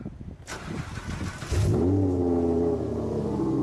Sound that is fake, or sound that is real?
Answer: real